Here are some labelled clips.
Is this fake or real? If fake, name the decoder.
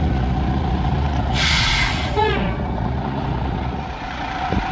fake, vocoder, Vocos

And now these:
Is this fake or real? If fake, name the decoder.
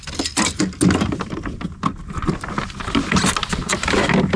real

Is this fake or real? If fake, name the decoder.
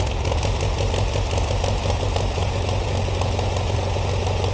real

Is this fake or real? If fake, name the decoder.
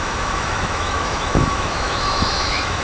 fake, autoencoder, DAC-VAE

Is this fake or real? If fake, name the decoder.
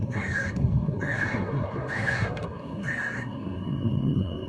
fake, codec, SNAC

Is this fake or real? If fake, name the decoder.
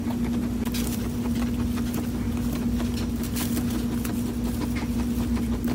real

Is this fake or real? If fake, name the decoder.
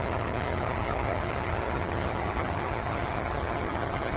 fake, vocoder, HiFi-GAN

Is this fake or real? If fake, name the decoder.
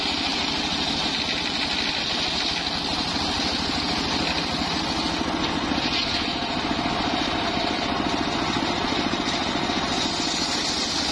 real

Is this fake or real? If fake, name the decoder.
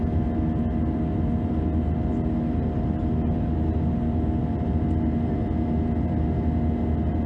real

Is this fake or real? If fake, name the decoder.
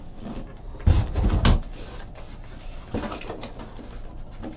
real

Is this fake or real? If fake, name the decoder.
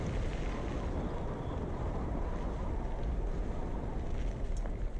real